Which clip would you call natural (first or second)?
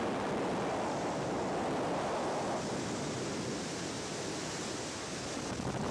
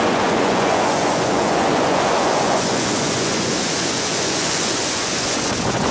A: first